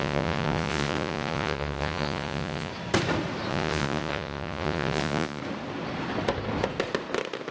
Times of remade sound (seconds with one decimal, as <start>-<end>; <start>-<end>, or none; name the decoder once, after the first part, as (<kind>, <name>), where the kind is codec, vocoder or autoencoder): 0.0-2.7 (vocoder, Vocos); 3.5-5.4